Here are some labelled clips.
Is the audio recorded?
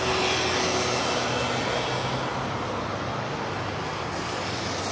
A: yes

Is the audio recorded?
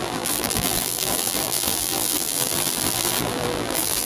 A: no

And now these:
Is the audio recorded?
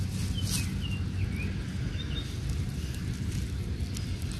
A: yes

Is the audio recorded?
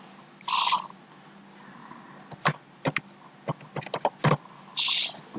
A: yes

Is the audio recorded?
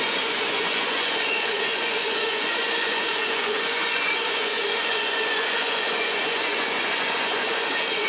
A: no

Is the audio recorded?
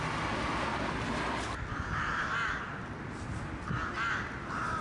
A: yes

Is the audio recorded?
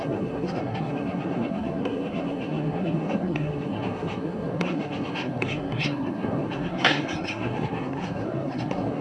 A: no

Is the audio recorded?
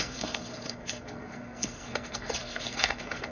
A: no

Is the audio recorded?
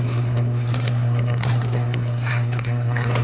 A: no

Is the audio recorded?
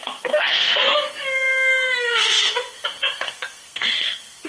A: no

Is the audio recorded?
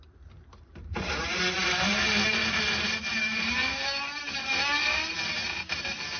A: no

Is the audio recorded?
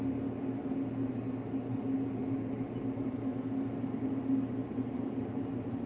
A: yes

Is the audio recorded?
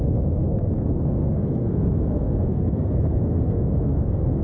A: no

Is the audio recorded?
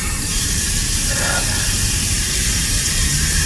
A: no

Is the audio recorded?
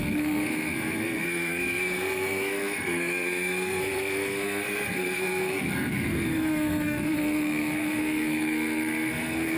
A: no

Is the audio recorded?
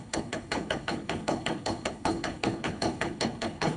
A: no